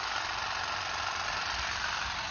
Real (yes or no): yes